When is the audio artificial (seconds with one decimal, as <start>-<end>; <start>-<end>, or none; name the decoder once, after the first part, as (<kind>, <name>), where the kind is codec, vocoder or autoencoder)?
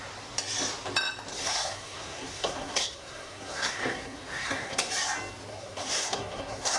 1.3-4.9 (codec, SNAC); 5.5-6.8